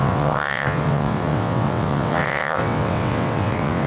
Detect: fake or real fake